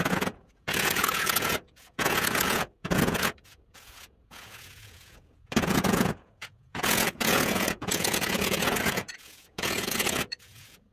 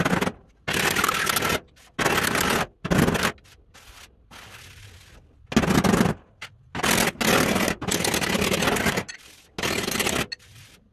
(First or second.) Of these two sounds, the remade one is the first